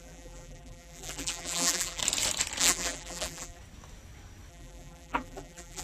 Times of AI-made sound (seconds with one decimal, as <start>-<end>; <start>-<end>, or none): 0.0-2.0; 2.6-3.6; 4.5-5.8